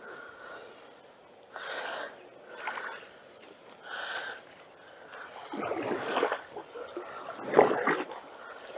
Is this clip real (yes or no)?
yes